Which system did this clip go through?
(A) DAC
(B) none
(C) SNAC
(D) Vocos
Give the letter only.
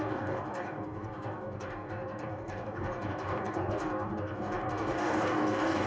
A